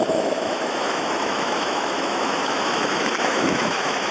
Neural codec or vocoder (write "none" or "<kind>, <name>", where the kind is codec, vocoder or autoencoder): autoencoder, DAC-VAE